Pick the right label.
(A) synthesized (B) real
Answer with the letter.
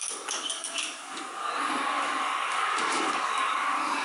A